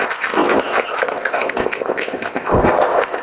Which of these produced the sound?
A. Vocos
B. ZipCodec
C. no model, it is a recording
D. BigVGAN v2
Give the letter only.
B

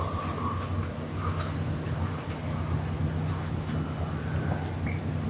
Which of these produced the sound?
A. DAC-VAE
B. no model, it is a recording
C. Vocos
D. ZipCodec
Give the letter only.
B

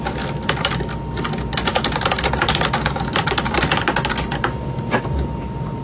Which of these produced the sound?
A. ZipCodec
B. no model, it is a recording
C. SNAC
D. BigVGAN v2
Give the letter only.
B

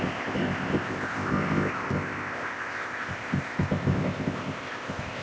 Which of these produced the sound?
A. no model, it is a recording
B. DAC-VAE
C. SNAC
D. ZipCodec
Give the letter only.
D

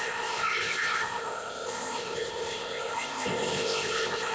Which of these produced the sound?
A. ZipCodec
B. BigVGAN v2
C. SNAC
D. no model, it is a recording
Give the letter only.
A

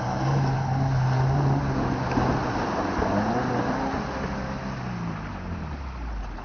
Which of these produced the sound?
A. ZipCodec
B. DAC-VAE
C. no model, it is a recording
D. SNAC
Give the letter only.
C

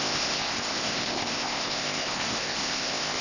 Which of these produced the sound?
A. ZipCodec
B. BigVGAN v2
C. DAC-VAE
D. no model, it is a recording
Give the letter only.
A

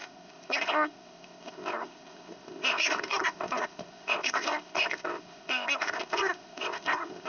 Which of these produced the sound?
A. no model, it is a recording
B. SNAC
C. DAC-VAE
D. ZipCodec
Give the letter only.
D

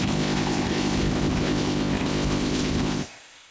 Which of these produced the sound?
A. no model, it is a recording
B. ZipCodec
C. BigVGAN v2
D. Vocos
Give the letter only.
B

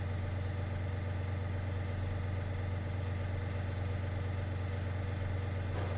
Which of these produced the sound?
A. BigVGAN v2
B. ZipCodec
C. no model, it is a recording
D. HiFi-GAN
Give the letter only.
C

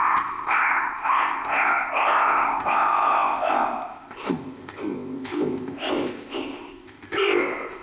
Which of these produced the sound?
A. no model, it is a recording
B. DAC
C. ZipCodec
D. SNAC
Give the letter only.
C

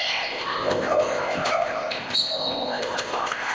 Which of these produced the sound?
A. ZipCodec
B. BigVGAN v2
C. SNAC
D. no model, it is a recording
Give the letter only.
A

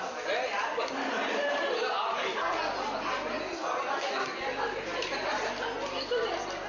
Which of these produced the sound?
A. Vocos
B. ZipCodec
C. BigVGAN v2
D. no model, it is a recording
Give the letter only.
D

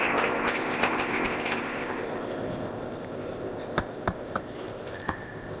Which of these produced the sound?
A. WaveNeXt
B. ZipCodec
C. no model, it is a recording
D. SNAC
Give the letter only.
B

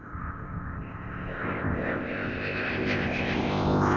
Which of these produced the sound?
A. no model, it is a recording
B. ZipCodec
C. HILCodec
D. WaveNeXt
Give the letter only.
B